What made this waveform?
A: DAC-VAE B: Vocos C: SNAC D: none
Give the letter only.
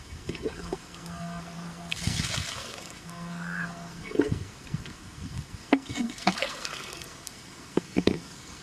C